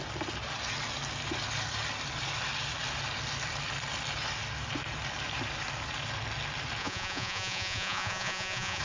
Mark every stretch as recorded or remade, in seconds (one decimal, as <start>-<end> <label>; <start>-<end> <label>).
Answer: 0.0-6.8 recorded; 6.8-8.8 remade